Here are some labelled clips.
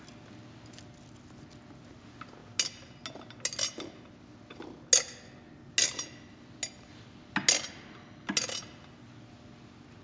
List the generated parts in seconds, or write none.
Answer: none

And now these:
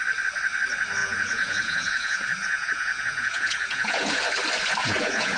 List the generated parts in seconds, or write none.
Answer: 1.0-4.2 (vocoder, Vocos); 4.8-5.4

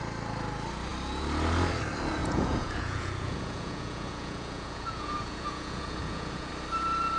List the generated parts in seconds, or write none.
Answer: 2.2-6.5 (vocoder, Vocos)

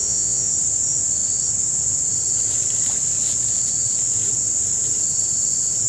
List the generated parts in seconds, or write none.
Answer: 0.0-0.5 (vocoder, Vocos)

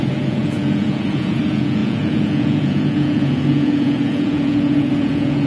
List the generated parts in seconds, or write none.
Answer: 0.0-5.5 (vocoder, Vocos)

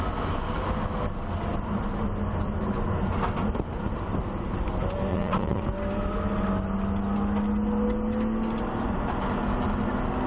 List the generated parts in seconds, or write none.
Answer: 5.1-5.6 (vocoder, Vocos)

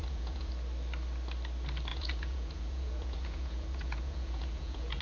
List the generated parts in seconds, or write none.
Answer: 0.0-0.5 (vocoder, Vocos); 1.9-5.0

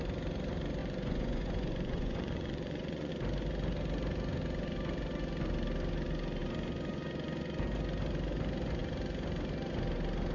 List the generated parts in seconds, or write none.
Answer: 0.8-3.1 (vocoder, Vocos)